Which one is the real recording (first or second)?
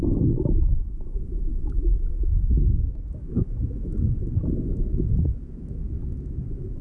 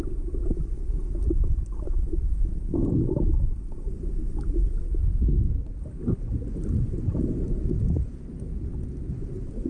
second